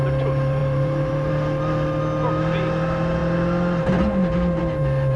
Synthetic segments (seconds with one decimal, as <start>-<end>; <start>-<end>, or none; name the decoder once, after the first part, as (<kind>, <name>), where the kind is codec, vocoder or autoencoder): 0.6-1.3 (vocoder, BigVGAN v2)